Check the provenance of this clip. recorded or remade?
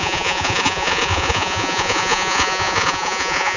remade